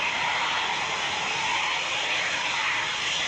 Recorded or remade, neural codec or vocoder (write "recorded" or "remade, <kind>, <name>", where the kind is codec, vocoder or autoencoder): recorded